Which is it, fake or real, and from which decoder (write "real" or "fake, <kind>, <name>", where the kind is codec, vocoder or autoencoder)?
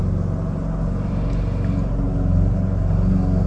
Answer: real